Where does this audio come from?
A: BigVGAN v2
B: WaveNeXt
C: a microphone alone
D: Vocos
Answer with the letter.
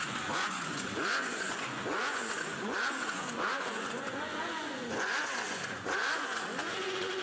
D